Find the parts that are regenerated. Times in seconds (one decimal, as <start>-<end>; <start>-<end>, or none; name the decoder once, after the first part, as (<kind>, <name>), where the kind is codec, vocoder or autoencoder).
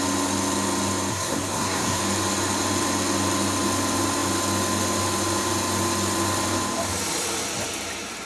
1.1-2.0 (codec, SNAC)